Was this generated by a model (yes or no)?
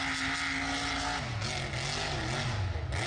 no